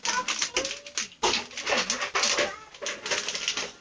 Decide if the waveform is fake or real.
real